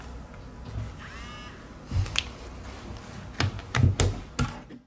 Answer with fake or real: real